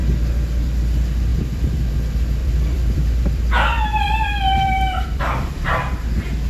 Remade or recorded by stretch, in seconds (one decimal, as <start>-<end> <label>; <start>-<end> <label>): 0.0-1.3 recorded; 1.3-1.9 remade; 1.9-2.4 recorded; 2.4-5.2 remade; 5.2-6.5 recorded